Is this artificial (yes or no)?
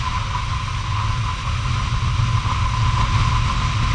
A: no